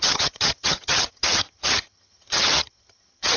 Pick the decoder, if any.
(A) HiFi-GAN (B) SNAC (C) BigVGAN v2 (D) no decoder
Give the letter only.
A